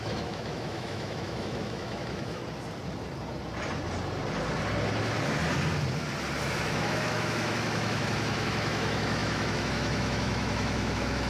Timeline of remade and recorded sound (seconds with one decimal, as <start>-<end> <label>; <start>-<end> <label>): 0.0-2.4 remade; 2.4-6.4 recorded; 6.4-11.3 remade